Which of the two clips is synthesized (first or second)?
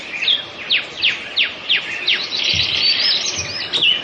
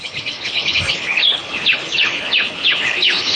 second